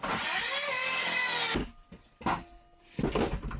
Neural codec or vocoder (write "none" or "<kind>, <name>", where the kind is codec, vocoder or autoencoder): none